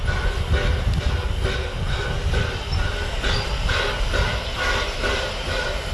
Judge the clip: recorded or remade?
recorded